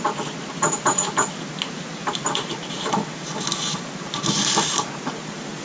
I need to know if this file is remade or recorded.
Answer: recorded